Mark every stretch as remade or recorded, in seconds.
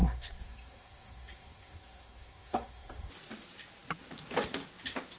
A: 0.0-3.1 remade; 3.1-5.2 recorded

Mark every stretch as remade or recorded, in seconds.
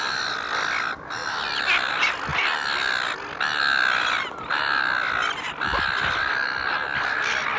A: 0.0-7.6 recorded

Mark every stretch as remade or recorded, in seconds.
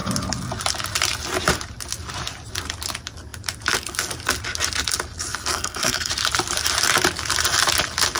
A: 0.0-5.5 recorded; 5.5-6.1 remade; 6.1-8.2 recorded